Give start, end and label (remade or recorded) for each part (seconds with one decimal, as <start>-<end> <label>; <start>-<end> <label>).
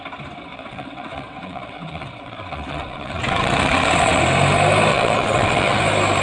0.0-0.5 recorded; 0.5-4.2 remade; 4.2-4.9 recorded; 4.9-5.8 remade; 5.8-6.2 recorded